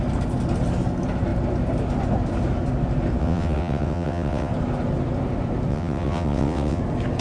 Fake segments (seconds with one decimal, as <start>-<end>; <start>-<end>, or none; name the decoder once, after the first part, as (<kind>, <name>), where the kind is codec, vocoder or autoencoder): 3.2-4.5 (vocoder, WaveNeXt); 5.7-6.8